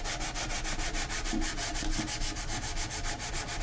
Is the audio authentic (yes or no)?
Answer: yes